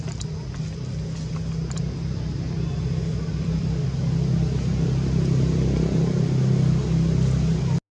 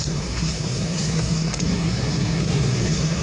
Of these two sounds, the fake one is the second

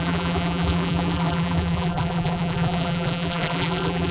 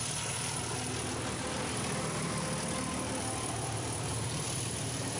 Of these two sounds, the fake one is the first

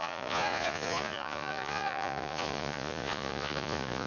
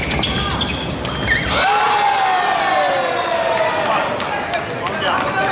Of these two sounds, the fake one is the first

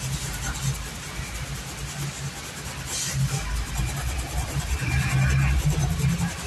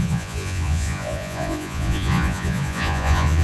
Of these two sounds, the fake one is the second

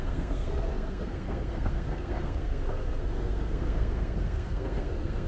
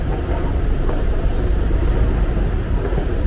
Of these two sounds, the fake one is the first